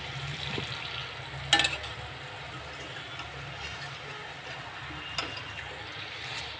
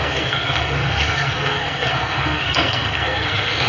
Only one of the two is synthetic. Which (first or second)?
second